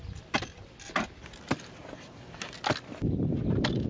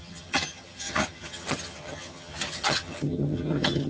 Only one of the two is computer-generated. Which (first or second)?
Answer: second